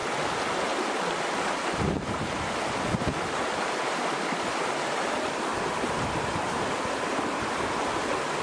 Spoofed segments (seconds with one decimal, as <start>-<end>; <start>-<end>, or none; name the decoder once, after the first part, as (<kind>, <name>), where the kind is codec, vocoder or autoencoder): none

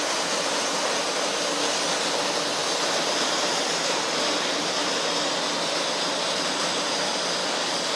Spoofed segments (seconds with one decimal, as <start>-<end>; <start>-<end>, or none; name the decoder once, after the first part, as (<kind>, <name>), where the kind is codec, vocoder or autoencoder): 7.4-8.0 (codec, DAC)

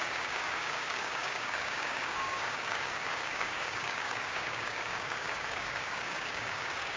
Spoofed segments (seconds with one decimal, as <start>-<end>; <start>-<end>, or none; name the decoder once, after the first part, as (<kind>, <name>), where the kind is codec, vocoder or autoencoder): 0.0-7.0 (codec, DAC)

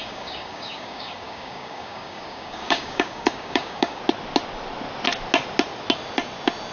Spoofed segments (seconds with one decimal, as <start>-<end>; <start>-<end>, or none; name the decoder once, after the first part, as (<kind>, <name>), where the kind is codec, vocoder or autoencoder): 0.0-4.0 (codec, DAC)

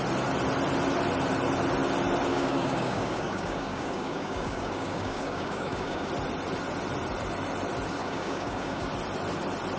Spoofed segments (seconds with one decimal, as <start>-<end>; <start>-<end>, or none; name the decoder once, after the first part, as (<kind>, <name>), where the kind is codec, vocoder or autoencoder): 2.3-6.1 (codec, DAC); 8.0-8.9